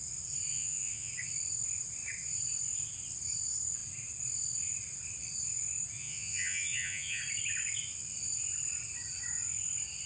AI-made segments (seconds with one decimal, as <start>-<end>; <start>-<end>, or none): 0.5-1.1; 6.0-7.2